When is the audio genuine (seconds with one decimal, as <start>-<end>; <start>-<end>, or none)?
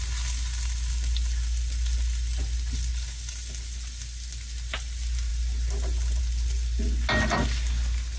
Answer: 0.0-8.2